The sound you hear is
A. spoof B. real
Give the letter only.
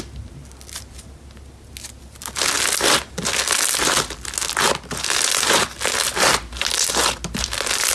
B